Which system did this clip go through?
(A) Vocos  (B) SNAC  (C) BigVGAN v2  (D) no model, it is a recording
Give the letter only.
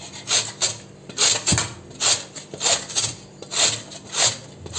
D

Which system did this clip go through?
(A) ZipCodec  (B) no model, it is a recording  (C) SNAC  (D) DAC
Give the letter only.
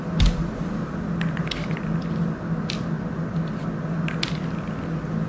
B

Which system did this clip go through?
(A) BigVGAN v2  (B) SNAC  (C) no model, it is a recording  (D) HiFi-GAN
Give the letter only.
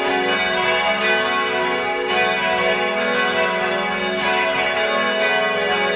C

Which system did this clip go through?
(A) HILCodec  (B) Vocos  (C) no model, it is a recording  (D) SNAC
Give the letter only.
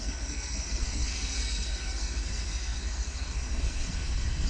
D